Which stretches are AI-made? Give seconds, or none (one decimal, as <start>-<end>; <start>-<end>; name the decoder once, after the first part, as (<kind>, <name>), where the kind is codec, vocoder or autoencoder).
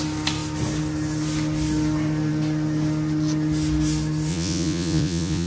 4.3-5.5 (vocoder, Vocos)